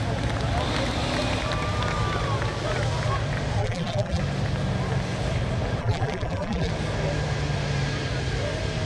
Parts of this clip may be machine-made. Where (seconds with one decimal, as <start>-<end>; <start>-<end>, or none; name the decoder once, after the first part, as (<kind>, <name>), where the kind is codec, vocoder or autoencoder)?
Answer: 3.6-4.2 (vocoder, BigVGAN v2); 5.8-6.7

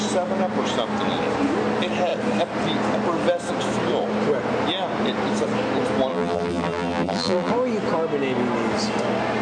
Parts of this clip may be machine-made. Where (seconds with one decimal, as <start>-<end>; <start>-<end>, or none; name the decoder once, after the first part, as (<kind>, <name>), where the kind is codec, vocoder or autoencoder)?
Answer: 6.1-7.5 (vocoder, BigVGAN v2)

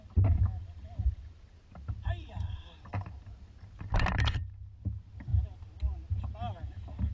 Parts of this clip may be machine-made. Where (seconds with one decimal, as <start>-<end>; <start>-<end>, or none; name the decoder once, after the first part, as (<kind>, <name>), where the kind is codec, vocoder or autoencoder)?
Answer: 0.6-4.4 (vocoder, BigVGAN v2)

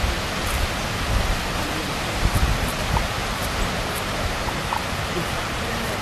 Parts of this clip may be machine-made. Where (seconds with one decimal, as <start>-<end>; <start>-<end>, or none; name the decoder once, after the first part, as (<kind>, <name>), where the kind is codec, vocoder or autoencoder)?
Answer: 0.0-3.2 (vocoder, BigVGAN v2); 4.6-6.0

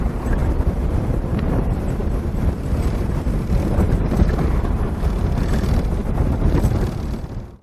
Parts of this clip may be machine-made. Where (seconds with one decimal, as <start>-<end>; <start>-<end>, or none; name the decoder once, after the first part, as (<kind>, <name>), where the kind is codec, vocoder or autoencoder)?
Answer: 0.0-0.4 (vocoder, BigVGAN v2); 0.9-7.6